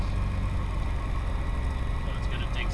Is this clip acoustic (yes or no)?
yes